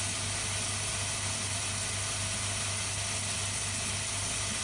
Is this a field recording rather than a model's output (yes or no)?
yes